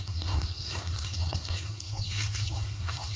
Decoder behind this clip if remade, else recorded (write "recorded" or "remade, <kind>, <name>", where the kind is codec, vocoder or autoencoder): remade, codec, SNAC